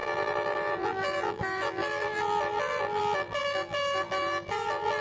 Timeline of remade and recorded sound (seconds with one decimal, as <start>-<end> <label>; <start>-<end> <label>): 0.0-5.0 remade